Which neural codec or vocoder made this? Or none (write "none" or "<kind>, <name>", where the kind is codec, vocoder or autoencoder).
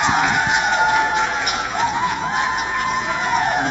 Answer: vocoder, Vocos